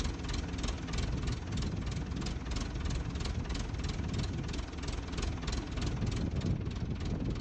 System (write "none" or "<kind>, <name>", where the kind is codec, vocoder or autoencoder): none